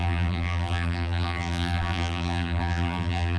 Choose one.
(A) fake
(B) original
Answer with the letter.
A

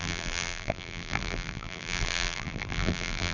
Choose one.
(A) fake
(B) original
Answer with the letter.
A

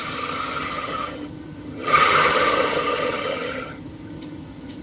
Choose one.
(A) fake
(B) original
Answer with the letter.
A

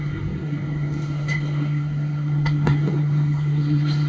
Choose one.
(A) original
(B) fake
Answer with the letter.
B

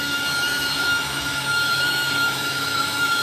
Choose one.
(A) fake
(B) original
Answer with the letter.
A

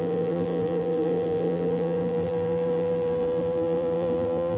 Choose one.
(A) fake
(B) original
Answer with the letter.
A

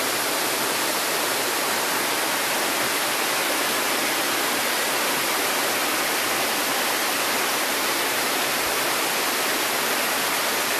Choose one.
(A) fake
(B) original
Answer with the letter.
B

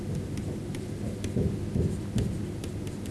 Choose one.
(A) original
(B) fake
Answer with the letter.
A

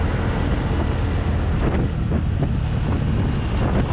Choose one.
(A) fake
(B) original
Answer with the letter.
B